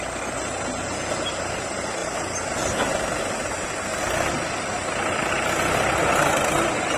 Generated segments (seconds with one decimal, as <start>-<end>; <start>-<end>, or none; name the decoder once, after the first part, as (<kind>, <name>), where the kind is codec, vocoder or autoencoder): none